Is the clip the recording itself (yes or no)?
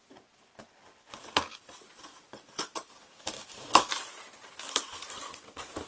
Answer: yes